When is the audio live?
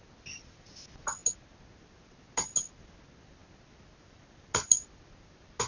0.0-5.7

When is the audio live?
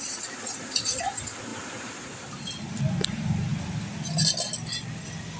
0.0-5.4